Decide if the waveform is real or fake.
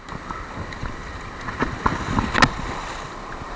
real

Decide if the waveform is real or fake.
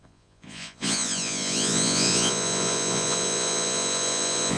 fake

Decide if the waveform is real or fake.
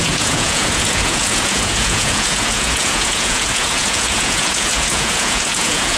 fake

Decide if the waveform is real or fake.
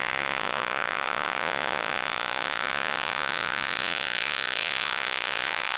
fake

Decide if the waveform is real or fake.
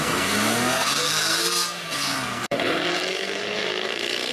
fake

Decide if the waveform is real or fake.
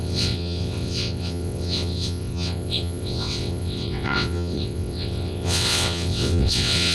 fake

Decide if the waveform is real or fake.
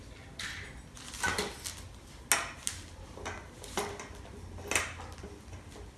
real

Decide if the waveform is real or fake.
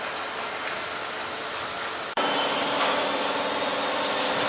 real